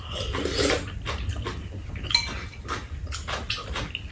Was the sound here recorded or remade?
recorded